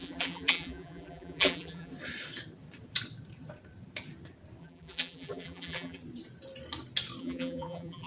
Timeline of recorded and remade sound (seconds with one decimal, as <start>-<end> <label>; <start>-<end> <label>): 0.0-1.9 remade; 1.9-4.6 recorded; 4.6-6.0 remade; 6.0-7.2 recorded; 7.2-8.1 remade